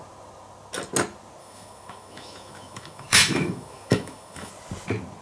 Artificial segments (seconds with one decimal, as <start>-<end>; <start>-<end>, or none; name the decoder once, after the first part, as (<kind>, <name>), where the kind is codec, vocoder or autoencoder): 1.4-4.5 (autoencoder, DAC-VAE)